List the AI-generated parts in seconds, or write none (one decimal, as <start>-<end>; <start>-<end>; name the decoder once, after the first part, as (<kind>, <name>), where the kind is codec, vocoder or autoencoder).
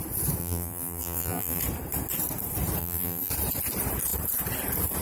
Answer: 0.4-1.6 (vocoder, BigVGAN v2); 2.8-3.3